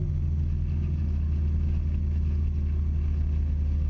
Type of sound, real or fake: real